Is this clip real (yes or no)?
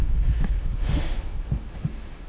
no